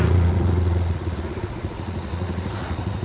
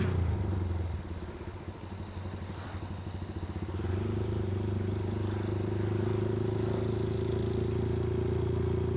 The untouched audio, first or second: second